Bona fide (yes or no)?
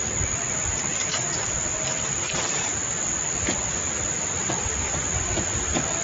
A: yes